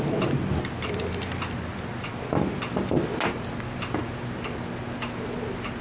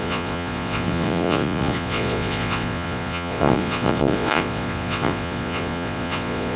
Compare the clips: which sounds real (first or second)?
first